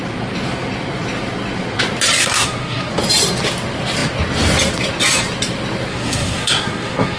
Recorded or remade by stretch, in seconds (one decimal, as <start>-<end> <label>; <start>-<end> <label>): 0.0-2.2 recorded; 2.2-2.9 remade; 2.9-5.9 recorded; 5.9-7.2 remade